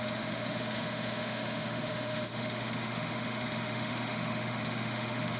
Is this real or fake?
fake